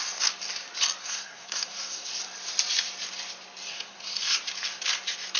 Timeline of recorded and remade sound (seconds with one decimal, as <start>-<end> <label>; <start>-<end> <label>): 0.0-1.0 recorded; 1.0-2.1 remade; 2.1-3.7 recorded; 3.7-4.4 remade; 4.4-5.4 recorded